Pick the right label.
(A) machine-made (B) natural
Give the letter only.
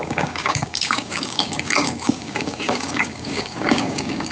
A